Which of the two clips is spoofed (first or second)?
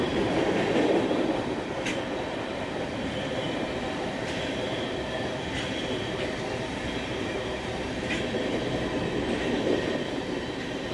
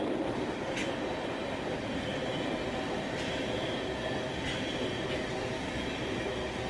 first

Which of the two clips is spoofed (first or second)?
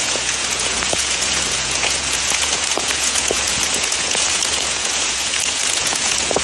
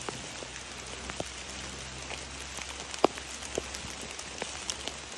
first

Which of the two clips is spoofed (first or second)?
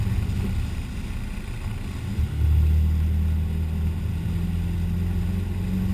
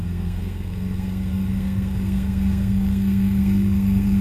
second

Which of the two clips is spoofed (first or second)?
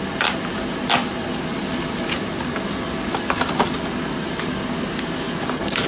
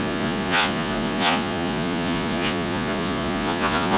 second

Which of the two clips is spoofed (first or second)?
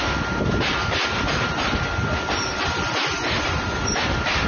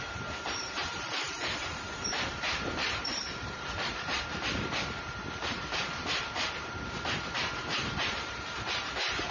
second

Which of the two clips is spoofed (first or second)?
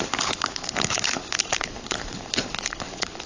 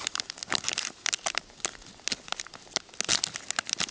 first